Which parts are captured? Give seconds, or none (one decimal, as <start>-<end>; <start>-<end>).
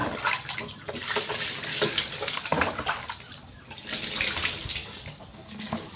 0.0-1.7; 2.8-4.8